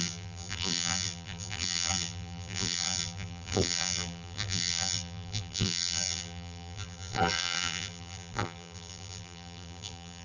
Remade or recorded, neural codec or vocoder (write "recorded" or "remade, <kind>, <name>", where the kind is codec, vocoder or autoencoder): remade, vocoder, BigVGAN v2